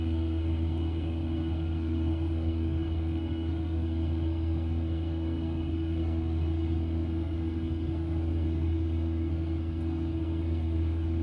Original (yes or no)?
no